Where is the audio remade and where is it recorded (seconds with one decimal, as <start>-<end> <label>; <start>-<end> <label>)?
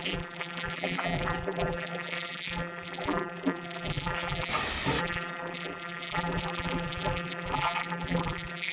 0.0-4.5 remade; 4.5-5.0 recorded; 5.0-8.7 remade